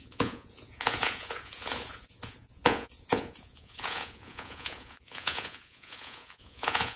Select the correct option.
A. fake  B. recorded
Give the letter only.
A